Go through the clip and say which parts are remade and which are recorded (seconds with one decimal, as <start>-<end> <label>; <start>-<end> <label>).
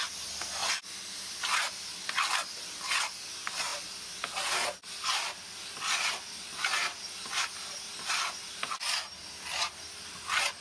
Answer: 0.0-10.6 recorded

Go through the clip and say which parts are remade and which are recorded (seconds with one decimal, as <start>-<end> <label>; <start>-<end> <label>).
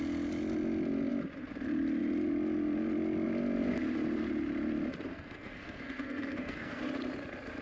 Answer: 0.0-5.1 recorded; 5.1-6.8 remade; 6.8-7.6 recorded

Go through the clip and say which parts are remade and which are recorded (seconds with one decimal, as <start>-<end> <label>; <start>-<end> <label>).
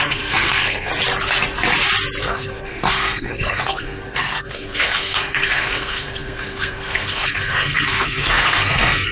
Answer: 0.0-0.9 remade; 0.9-2.2 recorded; 2.2-9.1 remade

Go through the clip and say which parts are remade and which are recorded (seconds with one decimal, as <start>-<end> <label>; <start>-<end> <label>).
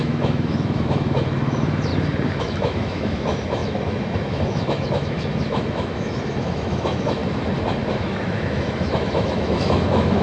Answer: 0.0-1.9 remade; 1.9-2.4 recorded; 2.4-7.2 remade; 7.2-7.9 recorded; 7.9-10.2 remade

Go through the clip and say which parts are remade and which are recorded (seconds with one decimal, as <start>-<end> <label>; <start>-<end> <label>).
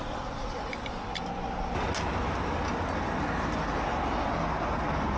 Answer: 0.0-5.2 recorded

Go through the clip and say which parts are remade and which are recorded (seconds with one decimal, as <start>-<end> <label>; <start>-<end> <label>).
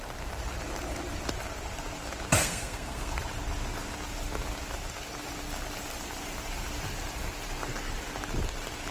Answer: 0.0-2.4 recorded; 2.4-3.1 remade; 3.1-8.9 recorded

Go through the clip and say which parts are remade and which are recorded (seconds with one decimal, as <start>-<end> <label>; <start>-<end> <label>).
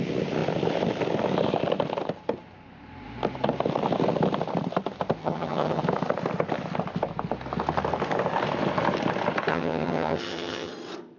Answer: 0.0-5.2 recorded; 5.2-5.8 remade; 5.8-9.5 recorded; 9.5-10.7 remade; 10.7-11.2 recorded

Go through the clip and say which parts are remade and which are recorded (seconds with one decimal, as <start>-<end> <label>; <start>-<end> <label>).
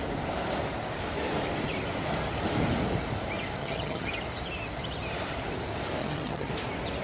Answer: 0.0-3.6 recorded; 3.6-4.1 remade; 4.1-6.0 recorded; 6.0-6.5 remade; 6.5-7.0 recorded